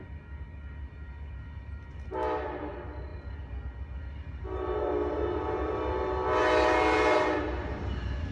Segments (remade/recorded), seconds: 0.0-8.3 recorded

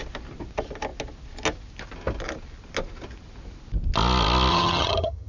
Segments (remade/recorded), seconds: 0.0-4.5 recorded; 4.5-5.3 remade

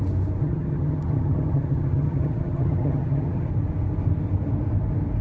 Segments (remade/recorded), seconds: 0.0-0.4 recorded; 0.4-3.5 remade; 3.5-5.2 recorded

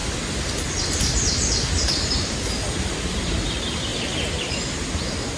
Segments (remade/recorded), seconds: 0.0-5.4 recorded

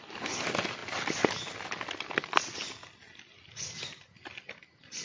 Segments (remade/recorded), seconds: 0.0-5.0 recorded